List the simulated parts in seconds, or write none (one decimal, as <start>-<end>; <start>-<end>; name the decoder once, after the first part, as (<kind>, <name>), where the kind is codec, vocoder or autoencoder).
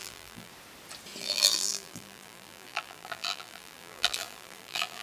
0.0-0.5 (vocoder, BigVGAN v2); 1.2-5.0